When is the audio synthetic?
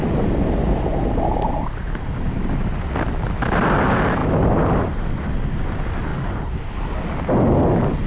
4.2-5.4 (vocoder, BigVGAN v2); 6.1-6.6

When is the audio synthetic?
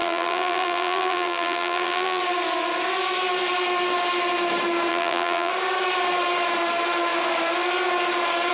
0.0-2.2 (vocoder, BigVGAN v2); 4.9-5.5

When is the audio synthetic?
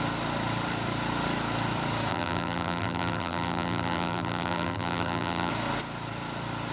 2.1-5.5 (vocoder, BigVGAN v2)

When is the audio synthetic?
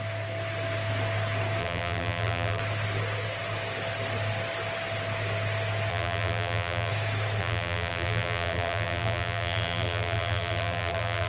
1.6-2.6 (vocoder, BigVGAN v2); 5.9-6.9; 7.4-11.3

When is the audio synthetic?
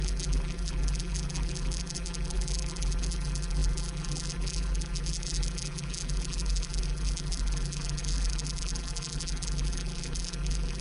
0.0-10.8 (vocoder, BigVGAN v2)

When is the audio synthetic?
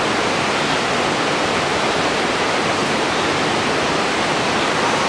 1.7-2.3 (vocoder, BigVGAN v2); 2.8-5.1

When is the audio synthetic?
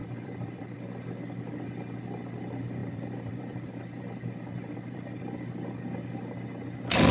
0.0-1.0 (vocoder, BigVGAN v2); 2.8-5.2